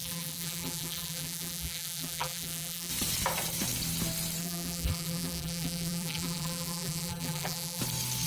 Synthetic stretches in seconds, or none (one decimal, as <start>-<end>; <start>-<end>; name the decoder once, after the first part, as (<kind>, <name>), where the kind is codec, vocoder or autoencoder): 0.0-2.9 (vocoder, BigVGAN v2); 4.4-7.8